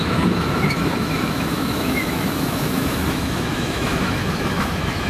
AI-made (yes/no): yes